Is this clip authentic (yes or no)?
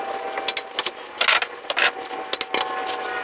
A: yes